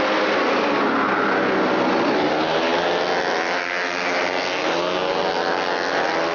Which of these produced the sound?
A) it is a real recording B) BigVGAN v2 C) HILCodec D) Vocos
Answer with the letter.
A